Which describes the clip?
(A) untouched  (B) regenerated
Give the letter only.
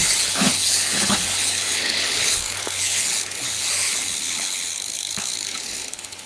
B